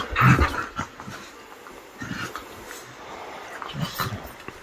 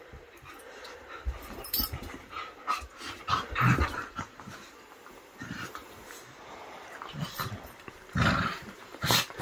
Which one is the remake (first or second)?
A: second